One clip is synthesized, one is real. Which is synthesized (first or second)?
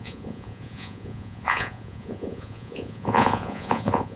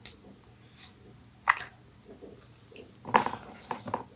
first